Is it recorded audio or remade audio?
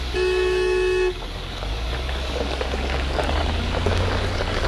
remade